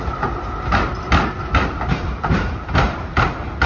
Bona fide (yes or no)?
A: yes